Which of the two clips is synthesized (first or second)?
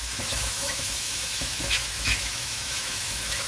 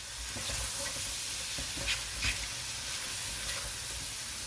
first